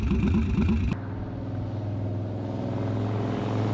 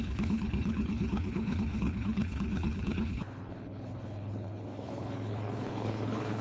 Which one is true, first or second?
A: first